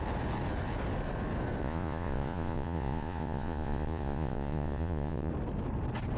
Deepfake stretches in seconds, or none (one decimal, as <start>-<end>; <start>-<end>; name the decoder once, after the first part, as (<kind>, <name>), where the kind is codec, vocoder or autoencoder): 1.6-5.3 (vocoder, Vocos)

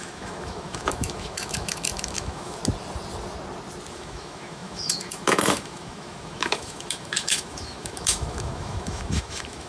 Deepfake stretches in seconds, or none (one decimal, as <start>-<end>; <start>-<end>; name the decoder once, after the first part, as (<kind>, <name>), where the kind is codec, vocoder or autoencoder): 0.0-2.6 (autoencoder, DAC-VAE); 3.9-9.7

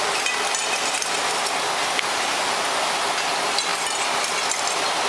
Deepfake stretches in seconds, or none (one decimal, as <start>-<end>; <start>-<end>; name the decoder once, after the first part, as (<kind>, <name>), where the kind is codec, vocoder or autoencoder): none

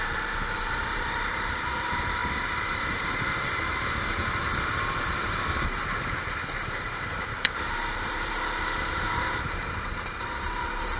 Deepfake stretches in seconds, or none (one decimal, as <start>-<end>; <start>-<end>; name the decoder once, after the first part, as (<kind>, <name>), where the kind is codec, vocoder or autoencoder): 0.0-11.0 (vocoder, BigVGAN v2)